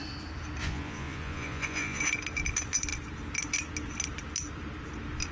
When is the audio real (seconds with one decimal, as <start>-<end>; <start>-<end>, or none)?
0.0-0.6; 2.0-5.3